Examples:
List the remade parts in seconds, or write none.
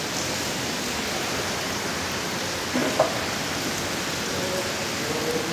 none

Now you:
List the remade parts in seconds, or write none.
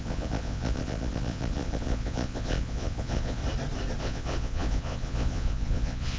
0.0-3.4 (vocoder, Vocos); 4.0-6.2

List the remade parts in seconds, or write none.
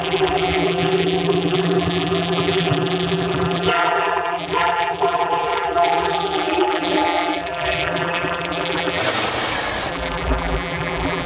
0.0-9.0 (vocoder, BigVGAN v2); 9.9-11.3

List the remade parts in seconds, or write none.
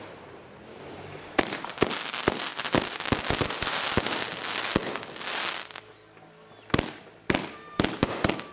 none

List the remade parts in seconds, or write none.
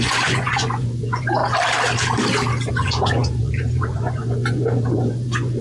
0.0-1.4 (vocoder, Vocos); 2.7-5.6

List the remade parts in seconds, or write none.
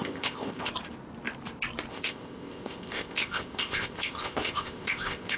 0.0-0.7 (codec, ZipCodec); 1.9-5.4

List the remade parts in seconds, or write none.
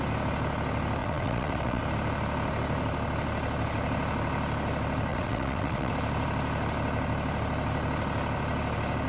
1.0-1.8 (vocoder, WaveNeXt); 5.1-5.9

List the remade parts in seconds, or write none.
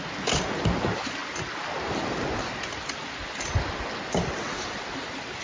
none